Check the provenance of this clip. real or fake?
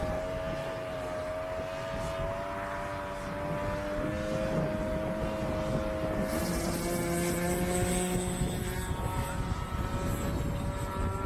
real